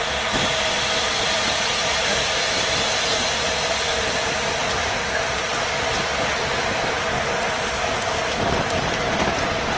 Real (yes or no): yes